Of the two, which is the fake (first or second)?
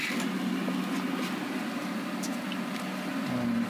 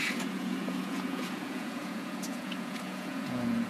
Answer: second